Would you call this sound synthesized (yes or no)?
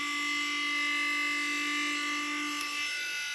no